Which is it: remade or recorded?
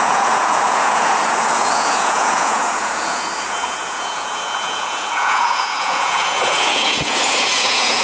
remade